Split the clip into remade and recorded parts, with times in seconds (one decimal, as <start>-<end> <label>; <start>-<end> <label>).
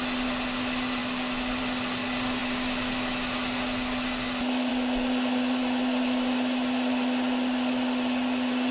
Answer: 0.0-8.7 recorded